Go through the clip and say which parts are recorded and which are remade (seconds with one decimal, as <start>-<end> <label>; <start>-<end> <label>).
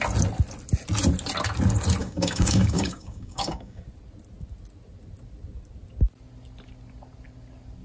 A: 0.0-2.0 recorded; 2.0-3.8 remade; 3.8-7.8 recorded